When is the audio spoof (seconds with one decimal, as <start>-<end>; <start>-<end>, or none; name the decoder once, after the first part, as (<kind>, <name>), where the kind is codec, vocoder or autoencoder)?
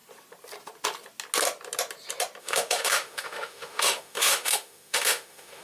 2.4-5.6 (autoencoder, DAC-VAE)